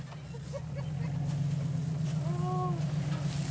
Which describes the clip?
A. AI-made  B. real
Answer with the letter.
B